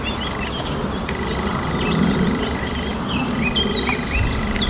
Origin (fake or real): real